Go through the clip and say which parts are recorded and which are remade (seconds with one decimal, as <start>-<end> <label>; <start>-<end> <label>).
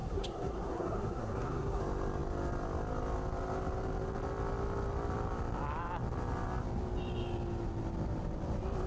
0.0-1.8 remade; 1.8-8.9 recorded